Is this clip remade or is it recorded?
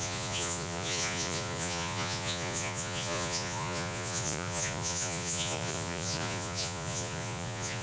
remade